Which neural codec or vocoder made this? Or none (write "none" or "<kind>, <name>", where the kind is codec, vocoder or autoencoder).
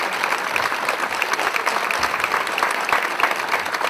none